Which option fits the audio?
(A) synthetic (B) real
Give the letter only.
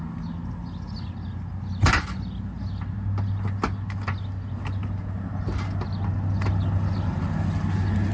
B